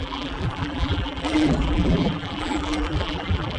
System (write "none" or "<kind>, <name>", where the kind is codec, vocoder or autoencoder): vocoder, BigVGAN v2